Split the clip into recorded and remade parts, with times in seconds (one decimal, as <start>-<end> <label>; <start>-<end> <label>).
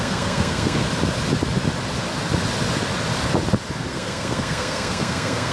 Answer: 0.0-0.8 remade; 0.8-3.9 recorded; 3.9-5.5 remade